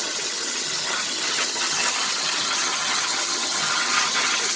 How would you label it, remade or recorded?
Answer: remade